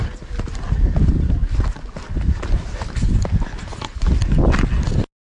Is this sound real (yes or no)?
yes